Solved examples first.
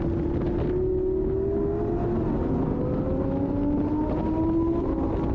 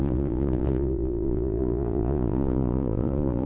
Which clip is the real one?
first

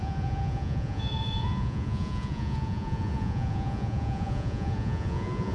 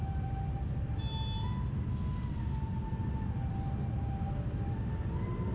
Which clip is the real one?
second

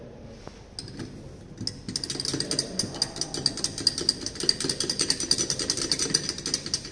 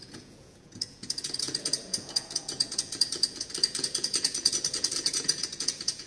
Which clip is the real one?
first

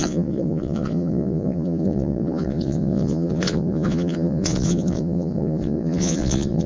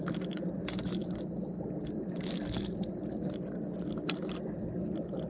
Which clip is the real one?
second